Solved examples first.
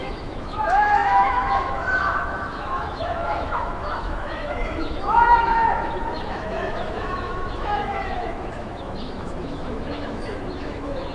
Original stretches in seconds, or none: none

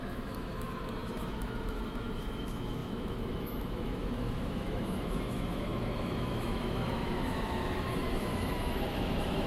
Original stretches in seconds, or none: none

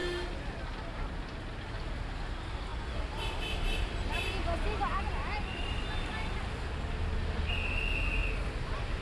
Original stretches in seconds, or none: 0.0-9.0

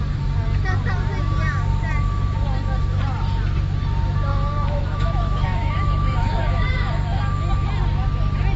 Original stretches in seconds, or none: 0.0-4.3; 6.9-8.6

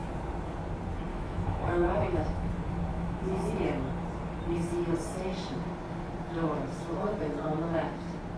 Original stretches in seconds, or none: 0.0-1.1; 2.5-2.9; 3.5-8.4

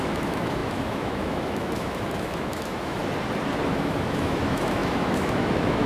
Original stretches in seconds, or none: 3.0-3.7

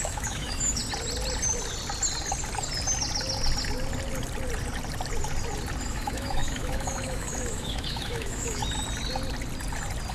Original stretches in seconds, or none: 0.8-5.9; 8.6-10.1